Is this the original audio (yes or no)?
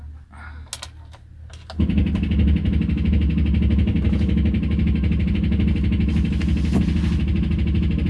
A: yes